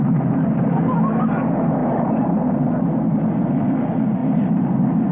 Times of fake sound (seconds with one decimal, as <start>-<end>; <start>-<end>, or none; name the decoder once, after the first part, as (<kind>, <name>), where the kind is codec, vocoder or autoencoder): 1.8-3.0 (vocoder, BigVGAN v2); 4.2-5.1